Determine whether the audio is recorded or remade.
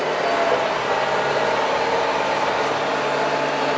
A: recorded